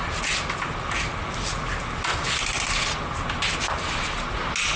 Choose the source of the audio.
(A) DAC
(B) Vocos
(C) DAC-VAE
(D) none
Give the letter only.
D